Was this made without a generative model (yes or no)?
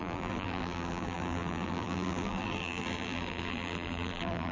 no